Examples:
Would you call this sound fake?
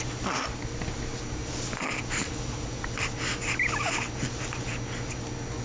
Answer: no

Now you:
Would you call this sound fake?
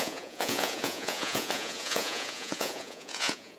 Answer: yes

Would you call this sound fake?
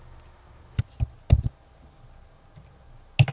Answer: no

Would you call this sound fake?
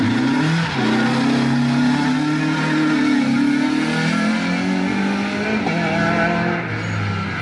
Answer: no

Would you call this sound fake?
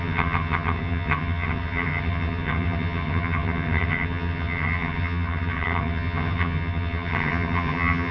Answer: yes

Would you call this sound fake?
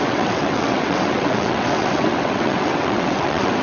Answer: yes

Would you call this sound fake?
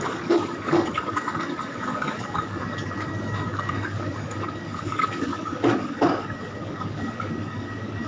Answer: yes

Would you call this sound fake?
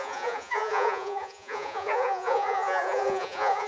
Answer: yes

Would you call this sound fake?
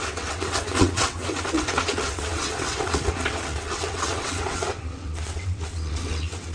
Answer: yes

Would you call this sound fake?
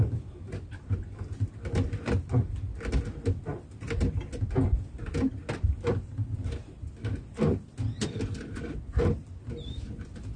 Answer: no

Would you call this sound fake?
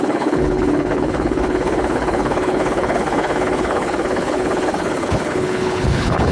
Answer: yes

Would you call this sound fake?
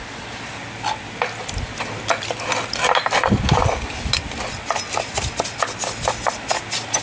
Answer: no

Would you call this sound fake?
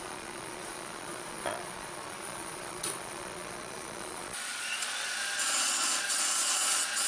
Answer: yes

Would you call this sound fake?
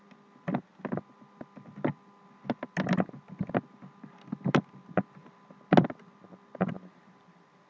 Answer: no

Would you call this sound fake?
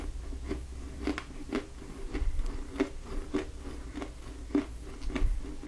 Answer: no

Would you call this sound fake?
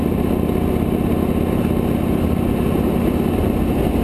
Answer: no